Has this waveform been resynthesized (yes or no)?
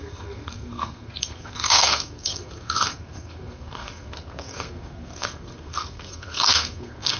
yes